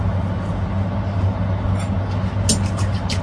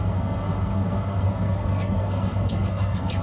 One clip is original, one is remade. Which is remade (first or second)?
second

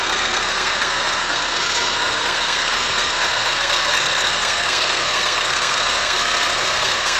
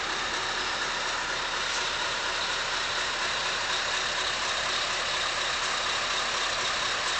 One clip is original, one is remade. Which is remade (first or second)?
first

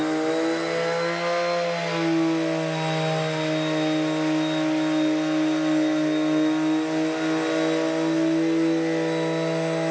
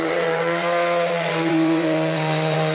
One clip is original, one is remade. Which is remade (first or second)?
second